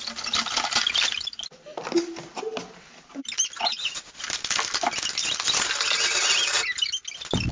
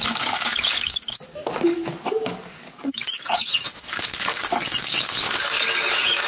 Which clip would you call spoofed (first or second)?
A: second